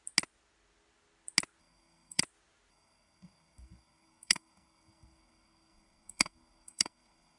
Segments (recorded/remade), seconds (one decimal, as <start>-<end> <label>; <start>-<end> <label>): 0.0-1.6 recorded; 1.6-2.2 remade; 2.2-2.7 recorded; 2.7-7.4 remade